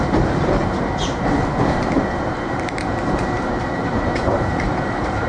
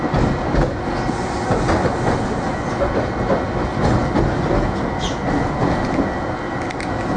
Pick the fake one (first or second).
first